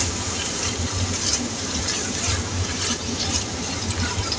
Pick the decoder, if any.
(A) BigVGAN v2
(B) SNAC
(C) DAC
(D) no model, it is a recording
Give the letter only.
A